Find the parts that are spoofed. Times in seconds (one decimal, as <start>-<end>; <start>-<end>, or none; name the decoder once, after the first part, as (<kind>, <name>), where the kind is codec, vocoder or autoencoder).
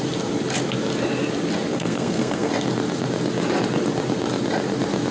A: 1.7-2.5 (codec, SNAC)